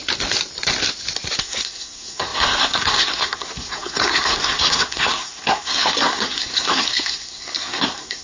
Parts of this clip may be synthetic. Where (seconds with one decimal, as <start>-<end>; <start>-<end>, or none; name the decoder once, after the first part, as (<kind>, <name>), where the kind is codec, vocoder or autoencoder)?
1.4-8.2 (codec, SNAC)